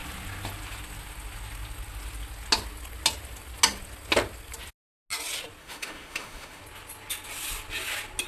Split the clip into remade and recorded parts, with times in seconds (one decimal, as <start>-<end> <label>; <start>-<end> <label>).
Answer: 0.0-5.6 recorded; 5.6-6.6 remade; 6.6-8.3 recorded